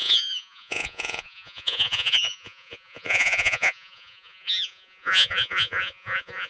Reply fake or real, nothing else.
fake